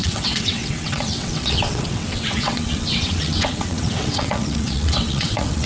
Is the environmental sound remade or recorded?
remade